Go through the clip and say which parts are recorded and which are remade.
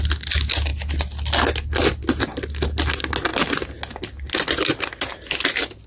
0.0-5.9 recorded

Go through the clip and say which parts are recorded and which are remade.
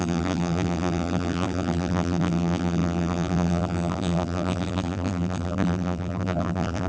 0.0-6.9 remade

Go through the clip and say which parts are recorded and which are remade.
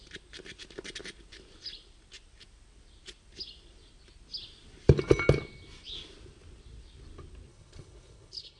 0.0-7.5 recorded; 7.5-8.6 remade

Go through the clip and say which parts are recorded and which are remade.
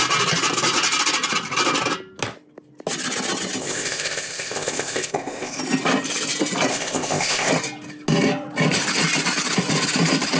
0.0-3.6 recorded; 3.6-5.6 remade; 5.6-6.7 recorded; 6.7-7.5 remade; 7.5-10.4 recorded